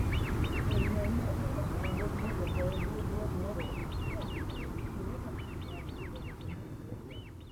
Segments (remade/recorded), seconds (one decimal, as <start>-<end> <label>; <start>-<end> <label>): 0.0-6.5 recorded; 6.5-7.0 remade; 7.0-7.5 recorded